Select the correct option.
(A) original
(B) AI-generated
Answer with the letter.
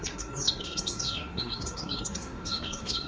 B